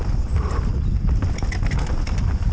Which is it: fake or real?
real